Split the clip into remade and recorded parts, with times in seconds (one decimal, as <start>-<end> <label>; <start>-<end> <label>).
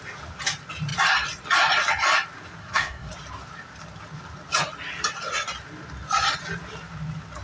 0.0-2.6 recorded; 2.6-3.1 remade; 3.1-7.4 recorded